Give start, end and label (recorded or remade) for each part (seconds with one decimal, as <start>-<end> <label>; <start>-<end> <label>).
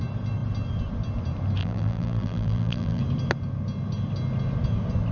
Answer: 0.0-1.6 recorded; 1.6-3.0 remade; 3.0-5.1 recorded